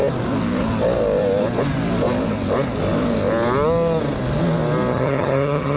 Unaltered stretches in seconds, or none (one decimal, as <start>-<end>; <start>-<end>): 0.0-4.9